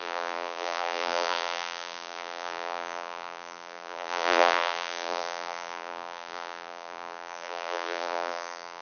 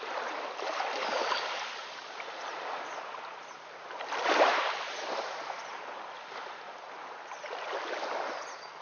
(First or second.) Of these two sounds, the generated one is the first